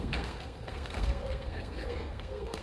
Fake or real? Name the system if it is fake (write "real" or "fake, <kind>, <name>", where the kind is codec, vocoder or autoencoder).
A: fake, codec, SNAC